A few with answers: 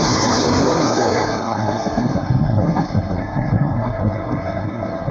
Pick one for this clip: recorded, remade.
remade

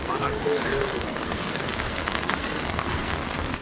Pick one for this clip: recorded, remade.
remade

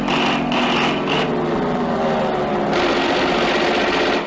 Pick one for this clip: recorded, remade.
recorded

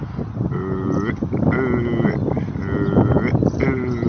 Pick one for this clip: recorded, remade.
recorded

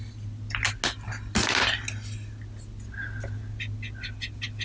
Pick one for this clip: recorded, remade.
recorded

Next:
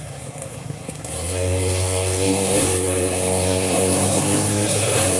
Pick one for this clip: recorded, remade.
remade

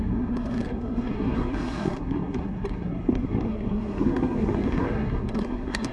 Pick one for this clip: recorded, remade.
remade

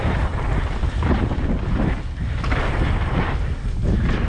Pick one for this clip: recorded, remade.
recorded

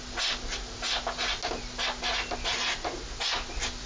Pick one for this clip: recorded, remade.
recorded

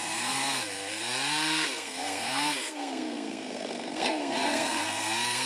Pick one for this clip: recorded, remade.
remade